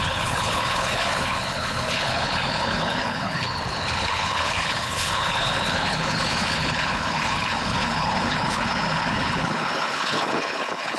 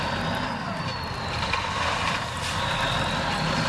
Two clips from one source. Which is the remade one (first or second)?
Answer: first